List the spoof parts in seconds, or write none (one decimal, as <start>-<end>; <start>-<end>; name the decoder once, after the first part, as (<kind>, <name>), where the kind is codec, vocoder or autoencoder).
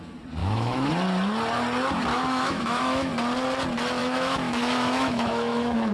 0.4-0.9 (autoencoder, DAC-VAE); 2.1-3.1; 4.0-5.9